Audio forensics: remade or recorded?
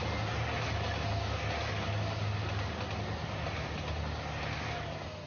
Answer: recorded